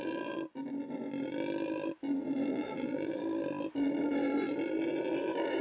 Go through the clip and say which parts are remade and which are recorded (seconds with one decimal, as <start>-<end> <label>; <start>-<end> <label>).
0.0-2.5 recorded; 2.5-3.2 remade; 3.2-5.6 recorded